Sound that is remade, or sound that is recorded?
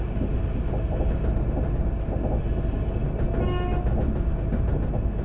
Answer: recorded